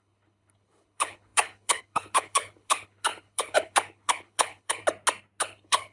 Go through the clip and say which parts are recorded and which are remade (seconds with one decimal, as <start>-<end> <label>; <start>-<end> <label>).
0.0-4.8 remade; 4.8-5.4 recorded; 5.4-5.9 remade